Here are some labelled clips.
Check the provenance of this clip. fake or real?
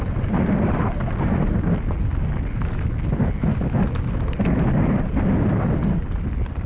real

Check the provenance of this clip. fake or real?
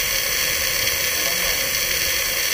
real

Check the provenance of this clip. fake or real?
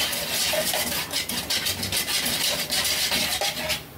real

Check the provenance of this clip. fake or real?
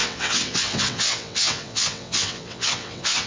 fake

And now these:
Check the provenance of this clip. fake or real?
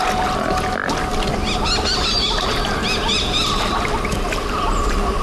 real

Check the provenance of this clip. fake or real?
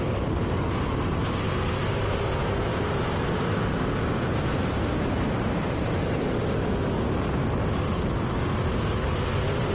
fake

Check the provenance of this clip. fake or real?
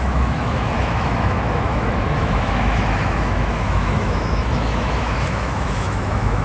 fake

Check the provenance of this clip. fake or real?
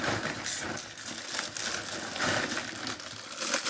real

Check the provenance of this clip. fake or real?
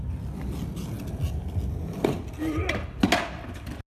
real